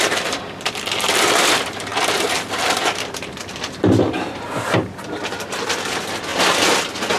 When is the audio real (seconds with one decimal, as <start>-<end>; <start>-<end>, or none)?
6.3-7.2